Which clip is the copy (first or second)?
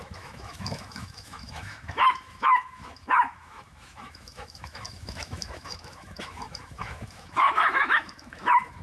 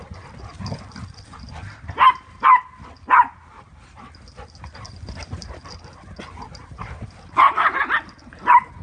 first